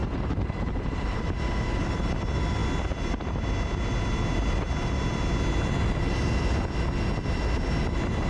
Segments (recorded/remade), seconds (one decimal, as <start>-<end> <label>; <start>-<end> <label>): 0.0-1.2 remade; 1.2-8.3 recorded